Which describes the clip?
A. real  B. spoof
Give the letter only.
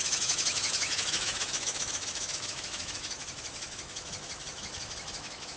B